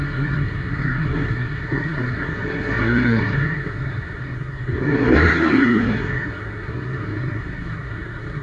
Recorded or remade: remade